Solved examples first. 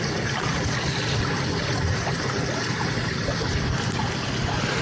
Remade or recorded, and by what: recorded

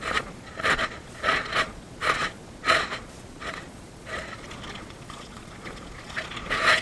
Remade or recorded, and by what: remade, vocoder, Vocos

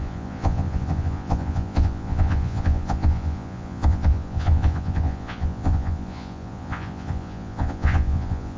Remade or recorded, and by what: remade, vocoder, Vocos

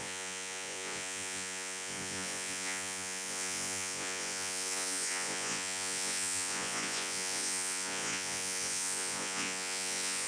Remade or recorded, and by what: remade, vocoder, Vocos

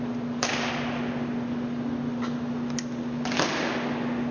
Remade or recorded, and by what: recorded